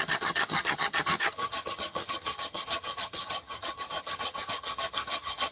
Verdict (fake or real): fake